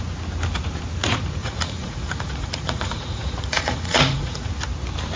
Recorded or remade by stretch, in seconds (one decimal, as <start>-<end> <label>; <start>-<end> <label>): 0.0-1.4 recorded; 1.4-4.5 remade; 4.5-5.2 recorded